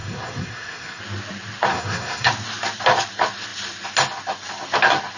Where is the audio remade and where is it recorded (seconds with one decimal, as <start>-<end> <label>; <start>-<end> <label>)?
0.0-1.0 remade; 1.0-1.7 recorded; 1.7-2.3 remade; 2.3-5.2 recorded